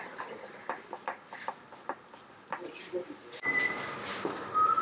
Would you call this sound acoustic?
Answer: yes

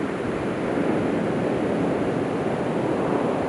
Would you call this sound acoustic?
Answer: yes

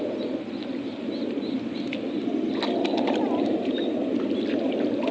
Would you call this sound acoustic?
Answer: yes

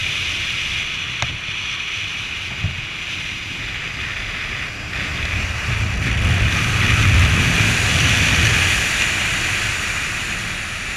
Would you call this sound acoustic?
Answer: yes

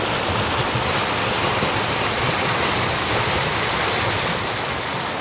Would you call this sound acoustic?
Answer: yes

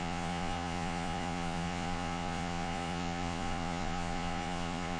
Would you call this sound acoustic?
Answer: no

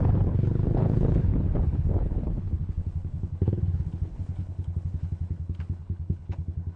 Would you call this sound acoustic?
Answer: no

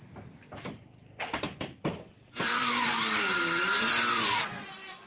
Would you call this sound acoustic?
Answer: no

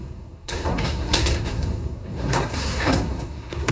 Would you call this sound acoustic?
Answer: no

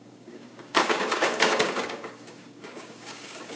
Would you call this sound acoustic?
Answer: no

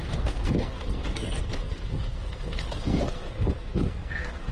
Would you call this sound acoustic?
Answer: no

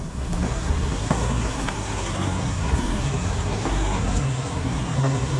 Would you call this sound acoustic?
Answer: no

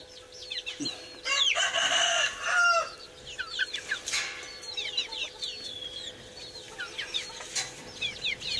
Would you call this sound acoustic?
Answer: yes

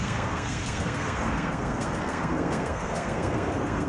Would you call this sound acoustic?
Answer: no